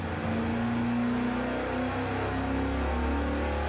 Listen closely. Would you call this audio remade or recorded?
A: recorded